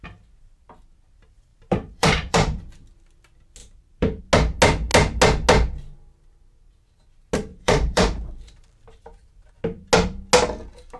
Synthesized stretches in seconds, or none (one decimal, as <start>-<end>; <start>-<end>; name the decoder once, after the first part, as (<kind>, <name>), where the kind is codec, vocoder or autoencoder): 1.5-2.6 (vocoder, BigVGAN v2); 3.6-4.2; 7.5-9.5